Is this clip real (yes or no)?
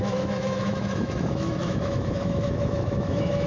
no